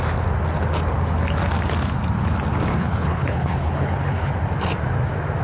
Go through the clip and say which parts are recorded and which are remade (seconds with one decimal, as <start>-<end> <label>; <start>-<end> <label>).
0.0-2.7 recorded; 2.7-4.3 remade; 4.3-5.4 recorded